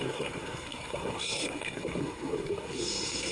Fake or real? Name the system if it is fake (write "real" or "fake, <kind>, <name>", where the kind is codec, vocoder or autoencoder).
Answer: fake, codec, SNAC